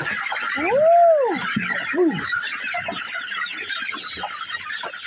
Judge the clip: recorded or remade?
recorded